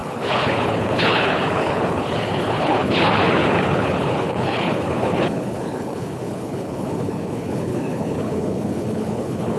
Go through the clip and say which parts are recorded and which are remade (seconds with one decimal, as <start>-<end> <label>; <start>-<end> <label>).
0.0-9.6 remade